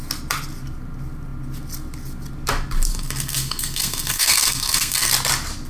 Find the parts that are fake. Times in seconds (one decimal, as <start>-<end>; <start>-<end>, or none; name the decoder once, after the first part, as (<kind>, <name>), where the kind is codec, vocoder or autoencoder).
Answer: 2.9-5.1 (codec, SNAC)